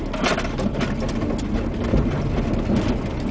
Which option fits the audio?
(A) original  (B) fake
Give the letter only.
A